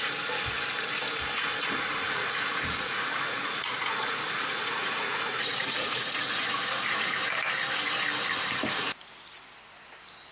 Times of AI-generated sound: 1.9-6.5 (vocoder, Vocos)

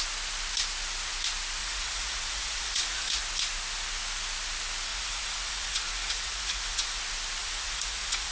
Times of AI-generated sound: 1.6-3.2 (vocoder, Vocos); 4.9-7.0; 7.4-8.3

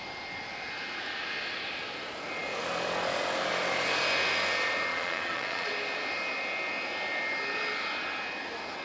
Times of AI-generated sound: 4.9-5.7 (vocoder, Vocos)

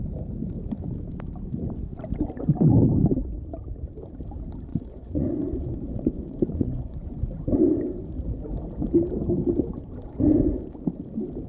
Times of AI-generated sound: 4.7-7.2 (vocoder, Vocos)

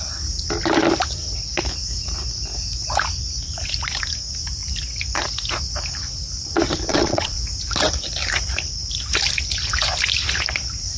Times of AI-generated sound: 6.9-7.4 (vocoder, Vocos)

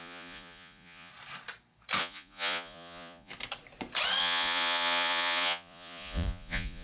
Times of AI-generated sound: 0.0-1.1 (vocoder, Vocos); 2.0-3.3; 4.2-6.8

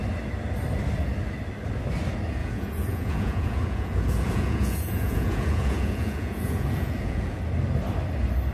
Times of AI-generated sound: 2.4-7.4 (vocoder, Vocos)

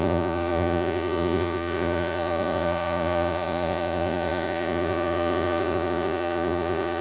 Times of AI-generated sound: 0.0-7.0 (vocoder, Vocos)